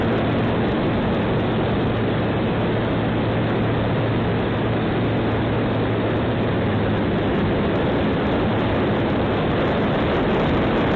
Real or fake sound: real